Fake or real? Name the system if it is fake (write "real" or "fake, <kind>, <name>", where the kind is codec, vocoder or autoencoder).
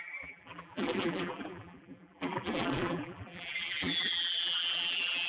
fake, vocoder, BigVGAN v2